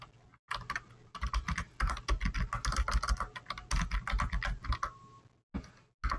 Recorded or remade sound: recorded